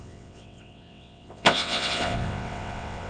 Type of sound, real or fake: fake